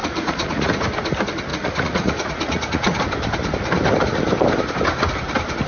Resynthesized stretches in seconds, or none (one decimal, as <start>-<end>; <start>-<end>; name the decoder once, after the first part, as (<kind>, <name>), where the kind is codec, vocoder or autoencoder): 0.0-0.8 (vocoder, Vocos); 1.5-3.0